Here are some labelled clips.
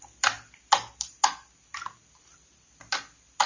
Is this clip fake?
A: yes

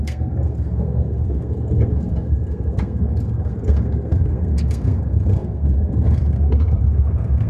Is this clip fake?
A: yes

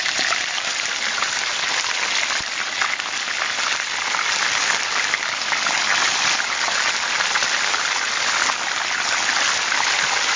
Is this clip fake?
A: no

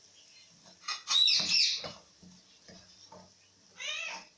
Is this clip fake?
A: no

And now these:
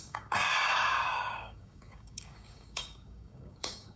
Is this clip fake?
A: yes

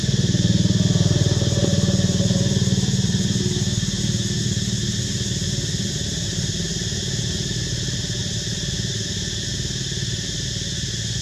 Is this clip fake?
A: no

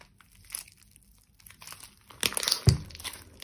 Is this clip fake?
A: no